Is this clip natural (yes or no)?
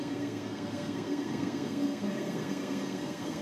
no